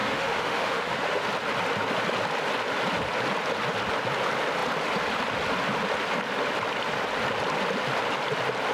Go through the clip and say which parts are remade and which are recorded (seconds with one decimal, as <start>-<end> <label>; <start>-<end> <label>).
0.0-1.3 remade; 1.3-8.7 recorded